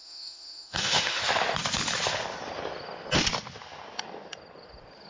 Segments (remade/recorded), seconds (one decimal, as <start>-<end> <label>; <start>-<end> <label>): 0.0-1.2 remade; 1.2-5.1 recorded